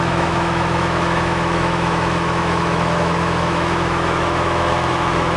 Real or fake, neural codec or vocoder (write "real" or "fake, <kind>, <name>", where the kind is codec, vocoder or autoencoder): fake, autoencoder, DAC-VAE